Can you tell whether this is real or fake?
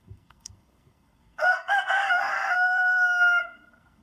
fake